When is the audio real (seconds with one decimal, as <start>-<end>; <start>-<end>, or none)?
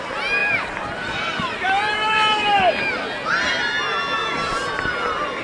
0.0-5.4